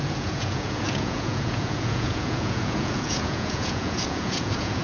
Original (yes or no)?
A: no